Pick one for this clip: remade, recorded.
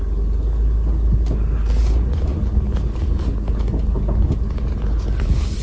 recorded